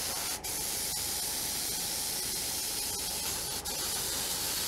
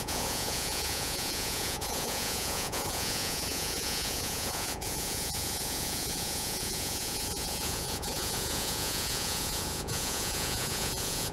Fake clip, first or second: second